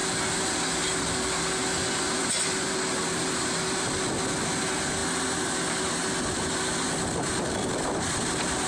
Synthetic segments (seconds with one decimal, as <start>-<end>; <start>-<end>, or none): 1.8-2.7